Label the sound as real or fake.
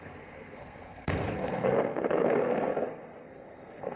fake